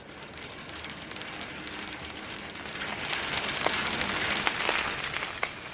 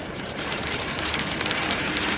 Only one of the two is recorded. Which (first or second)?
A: first